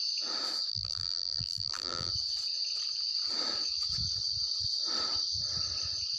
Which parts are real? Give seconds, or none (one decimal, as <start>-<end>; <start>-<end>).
0.0-0.7; 2.1-6.2

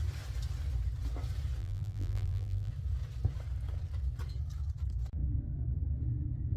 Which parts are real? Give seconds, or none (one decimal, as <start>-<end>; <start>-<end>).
0.0-1.6; 2.7-6.6

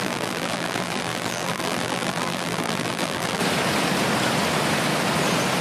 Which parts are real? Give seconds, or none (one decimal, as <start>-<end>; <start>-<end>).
3.4-5.6